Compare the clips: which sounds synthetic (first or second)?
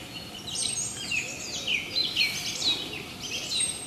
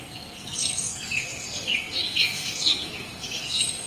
second